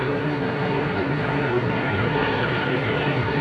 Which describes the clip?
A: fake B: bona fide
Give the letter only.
A